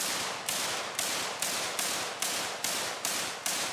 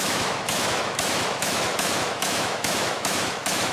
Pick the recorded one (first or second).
first